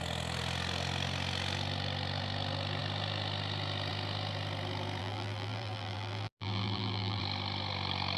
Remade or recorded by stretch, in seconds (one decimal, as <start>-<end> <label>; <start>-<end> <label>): 0.0-5.0 recorded; 5.0-7.2 remade; 7.2-8.2 recorded